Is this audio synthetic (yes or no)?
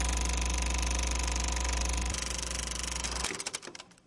no